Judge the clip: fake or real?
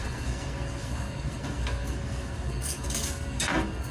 fake